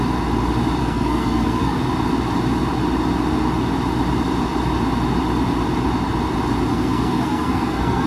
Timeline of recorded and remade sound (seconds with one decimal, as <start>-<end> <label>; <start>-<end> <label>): 0.0-0.8 recorded; 0.8-1.8 remade; 1.8-6.7 recorded; 6.7-8.1 remade